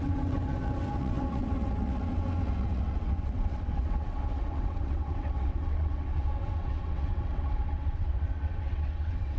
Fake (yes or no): yes